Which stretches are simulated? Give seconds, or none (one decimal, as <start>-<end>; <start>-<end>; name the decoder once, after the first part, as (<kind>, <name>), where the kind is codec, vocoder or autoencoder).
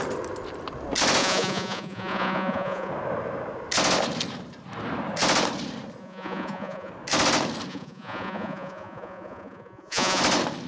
1.2-2.9 (vocoder, Vocos); 6.0-6.9; 7.7-10.2